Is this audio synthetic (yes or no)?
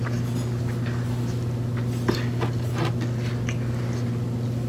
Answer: no